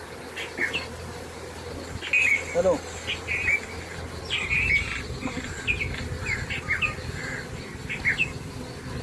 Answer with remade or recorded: recorded